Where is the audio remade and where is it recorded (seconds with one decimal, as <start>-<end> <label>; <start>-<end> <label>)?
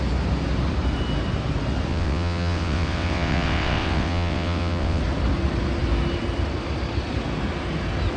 0.0-1.9 recorded; 1.9-5.0 remade; 5.0-8.2 recorded